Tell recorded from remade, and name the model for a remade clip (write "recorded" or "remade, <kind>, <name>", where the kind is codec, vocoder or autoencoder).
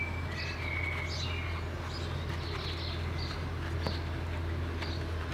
recorded